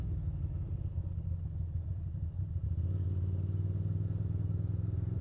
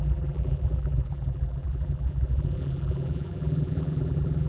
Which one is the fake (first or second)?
second